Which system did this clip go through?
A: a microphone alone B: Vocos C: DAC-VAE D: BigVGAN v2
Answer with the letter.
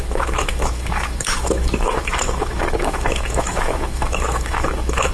C